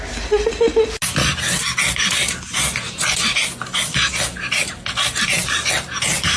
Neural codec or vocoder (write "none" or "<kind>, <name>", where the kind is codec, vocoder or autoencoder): none